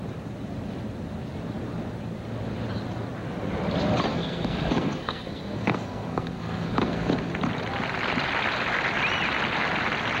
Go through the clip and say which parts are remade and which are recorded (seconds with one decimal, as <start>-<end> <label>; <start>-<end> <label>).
0.0-4.1 recorded; 4.1-7.3 remade; 7.3-10.2 recorded